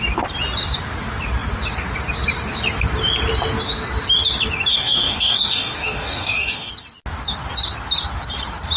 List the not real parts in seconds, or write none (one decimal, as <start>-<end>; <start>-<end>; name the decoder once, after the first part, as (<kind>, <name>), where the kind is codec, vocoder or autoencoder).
4.7-6.7 (codec, DAC)

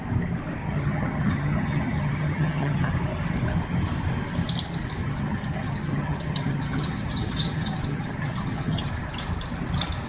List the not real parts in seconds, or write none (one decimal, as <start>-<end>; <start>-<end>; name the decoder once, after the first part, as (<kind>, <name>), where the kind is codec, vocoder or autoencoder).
0.6-2.9 (vocoder, HiFi-GAN); 5.0-8.8

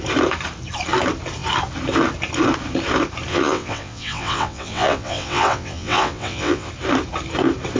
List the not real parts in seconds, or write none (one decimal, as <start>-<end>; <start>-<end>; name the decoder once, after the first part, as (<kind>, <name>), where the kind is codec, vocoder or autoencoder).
3.3-6.7 (vocoder, WaveNeXt)

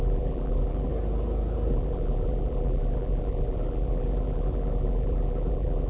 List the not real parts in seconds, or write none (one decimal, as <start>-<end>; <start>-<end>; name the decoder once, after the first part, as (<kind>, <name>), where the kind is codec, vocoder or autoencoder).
0.0-0.9 (vocoder, BigVGAN v2); 1.7-5.9

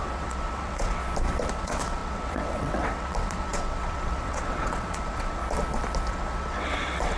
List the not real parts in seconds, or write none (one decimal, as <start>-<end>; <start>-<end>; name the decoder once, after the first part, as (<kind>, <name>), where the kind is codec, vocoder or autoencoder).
0.0-1.0 (vocoder, WaveNeXt); 1.5-5.4; 6.1-7.2

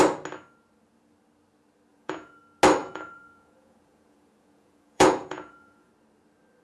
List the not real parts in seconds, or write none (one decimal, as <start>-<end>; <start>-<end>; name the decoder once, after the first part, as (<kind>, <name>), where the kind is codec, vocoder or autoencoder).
1.9-2.4 (vocoder, Vocos); 2.8-5.9

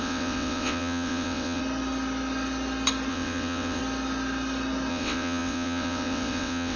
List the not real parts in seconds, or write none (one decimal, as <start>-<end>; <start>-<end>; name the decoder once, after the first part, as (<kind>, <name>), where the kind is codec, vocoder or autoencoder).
0.0-1.6 (vocoder, WaveNeXt); 3.1-3.8; 4.9-6.8